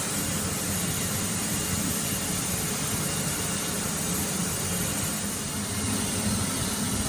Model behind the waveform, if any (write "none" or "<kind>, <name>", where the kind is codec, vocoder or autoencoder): none